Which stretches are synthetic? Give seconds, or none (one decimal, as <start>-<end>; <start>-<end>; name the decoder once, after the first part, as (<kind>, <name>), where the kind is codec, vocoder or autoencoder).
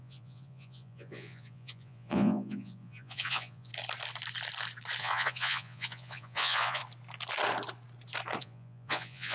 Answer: 0.0-3.7 (vocoder, Vocos); 5.0-6.8; 8.4-9.3